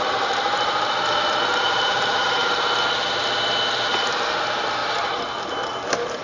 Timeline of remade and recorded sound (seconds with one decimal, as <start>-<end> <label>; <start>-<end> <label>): 0.0-2.4 remade; 2.4-3.7 recorded; 3.7-4.8 remade; 4.8-5.4 recorded; 5.4-6.2 remade